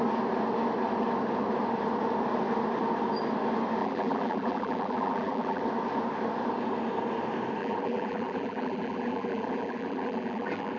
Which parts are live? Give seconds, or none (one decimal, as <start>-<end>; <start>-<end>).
0.0-3.8; 5.6-7.6